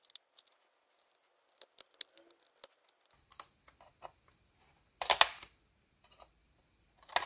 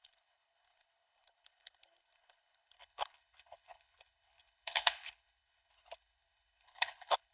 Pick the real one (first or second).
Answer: first